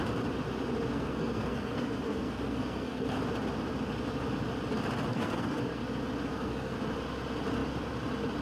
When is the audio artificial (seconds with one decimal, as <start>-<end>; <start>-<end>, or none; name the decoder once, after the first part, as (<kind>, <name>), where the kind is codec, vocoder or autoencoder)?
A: 0.9-3.2 (codec, SNAC); 5.1-5.8; 6.3-6.8